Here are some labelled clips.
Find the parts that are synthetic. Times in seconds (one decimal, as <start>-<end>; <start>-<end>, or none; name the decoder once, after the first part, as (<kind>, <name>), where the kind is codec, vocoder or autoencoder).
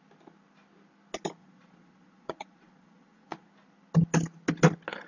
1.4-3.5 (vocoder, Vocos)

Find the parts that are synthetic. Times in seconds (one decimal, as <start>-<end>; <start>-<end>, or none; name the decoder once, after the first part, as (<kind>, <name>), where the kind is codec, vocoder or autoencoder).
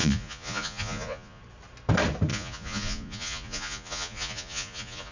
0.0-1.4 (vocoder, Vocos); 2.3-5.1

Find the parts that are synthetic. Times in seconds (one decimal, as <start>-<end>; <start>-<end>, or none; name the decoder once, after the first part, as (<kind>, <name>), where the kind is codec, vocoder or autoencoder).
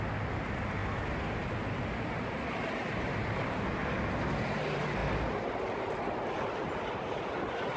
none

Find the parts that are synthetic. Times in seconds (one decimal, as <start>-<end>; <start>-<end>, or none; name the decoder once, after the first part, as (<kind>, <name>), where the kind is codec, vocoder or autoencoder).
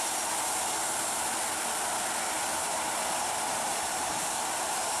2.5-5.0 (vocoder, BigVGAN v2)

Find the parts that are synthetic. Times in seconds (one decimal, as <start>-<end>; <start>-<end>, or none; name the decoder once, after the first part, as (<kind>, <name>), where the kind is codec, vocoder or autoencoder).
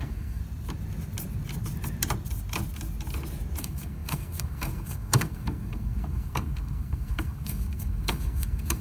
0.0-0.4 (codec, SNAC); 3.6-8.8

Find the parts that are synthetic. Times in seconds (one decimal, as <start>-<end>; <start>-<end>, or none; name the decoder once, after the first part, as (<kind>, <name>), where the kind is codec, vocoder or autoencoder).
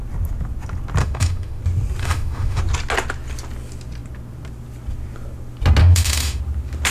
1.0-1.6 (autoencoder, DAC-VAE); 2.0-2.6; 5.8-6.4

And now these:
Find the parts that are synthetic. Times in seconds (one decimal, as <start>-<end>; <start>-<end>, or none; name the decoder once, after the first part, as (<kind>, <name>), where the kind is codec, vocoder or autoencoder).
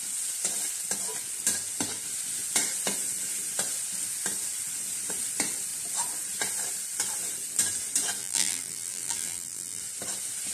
8.2-9.8 (vocoder, BigVGAN v2)